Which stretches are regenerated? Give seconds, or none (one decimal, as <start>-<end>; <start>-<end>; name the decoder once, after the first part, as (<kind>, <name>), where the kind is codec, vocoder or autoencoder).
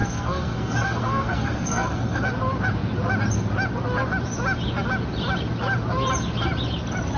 0.0-2.3 (codec, SNAC)